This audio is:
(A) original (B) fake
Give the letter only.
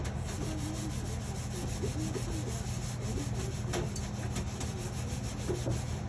A